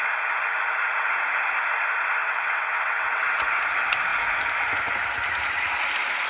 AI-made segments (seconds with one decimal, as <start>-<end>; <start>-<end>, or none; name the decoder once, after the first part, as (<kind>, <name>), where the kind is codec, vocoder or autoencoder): 2.2-3.4 (vocoder, WaveNeXt)